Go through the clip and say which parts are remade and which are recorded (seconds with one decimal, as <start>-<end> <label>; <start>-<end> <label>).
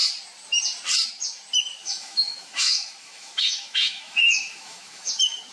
0.0-1.8 recorded; 1.8-5.1 remade; 5.1-5.5 recorded